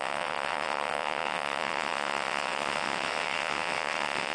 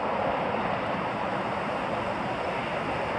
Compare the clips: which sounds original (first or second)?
second